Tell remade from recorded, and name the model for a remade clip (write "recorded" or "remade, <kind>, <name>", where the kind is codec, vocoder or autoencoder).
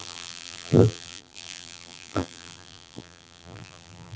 remade, vocoder, BigVGAN v2